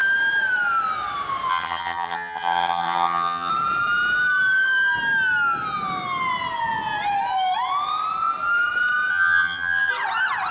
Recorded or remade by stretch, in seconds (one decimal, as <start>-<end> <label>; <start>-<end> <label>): 0.0-1.5 recorded; 1.5-3.5 remade; 3.5-9.1 recorded; 9.1-9.9 remade; 9.9-10.5 recorded

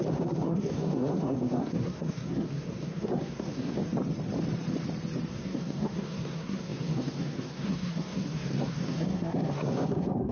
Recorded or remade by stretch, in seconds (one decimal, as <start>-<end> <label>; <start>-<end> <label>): 0.0-3.8 remade; 3.8-5.3 recorded; 5.3-10.3 remade

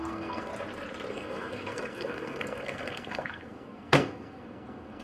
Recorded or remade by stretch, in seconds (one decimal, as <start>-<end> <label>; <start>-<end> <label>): 0.0-0.5 remade; 0.5-1.1 recorded; 1.1-5.0 remade

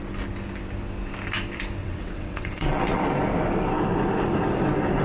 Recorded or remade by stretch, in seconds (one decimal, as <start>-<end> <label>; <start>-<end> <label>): 0.0-1.8 recorded; 1.8-3.0 remade; 3.0-5.0 recorded

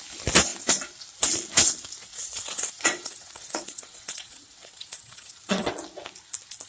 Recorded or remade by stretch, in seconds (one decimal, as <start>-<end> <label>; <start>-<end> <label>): 0.0-2.0 recorded; 2.0-5.7 remade; 5.7-6.7 recorded

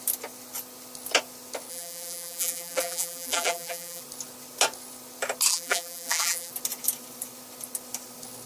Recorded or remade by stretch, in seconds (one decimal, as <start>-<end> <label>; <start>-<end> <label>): 0.0-1.7 recorded; 1.7-4.0 remade; 4.0-5.5 recorded; 5.5-6.5 remade; 6.5-8.5 recorded